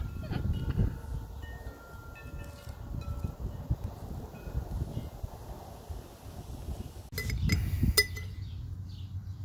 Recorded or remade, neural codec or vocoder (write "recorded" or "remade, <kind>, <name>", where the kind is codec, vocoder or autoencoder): recorded